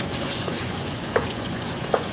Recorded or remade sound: remade